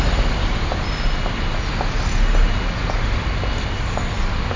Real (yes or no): yes